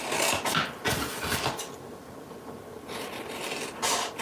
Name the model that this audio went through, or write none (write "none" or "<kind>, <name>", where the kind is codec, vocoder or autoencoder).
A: none